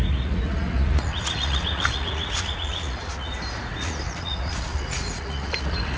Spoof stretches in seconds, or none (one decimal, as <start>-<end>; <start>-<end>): 0.0-3.3; 3.8-6.0